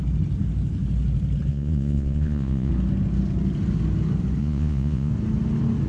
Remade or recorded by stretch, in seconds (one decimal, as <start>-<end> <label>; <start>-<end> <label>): 0.0-1.5 recorded; 1.5-2.7 remade; 2.7-4.4 recorded; 4.4-5.1 remade; 5.1-5.9 recorded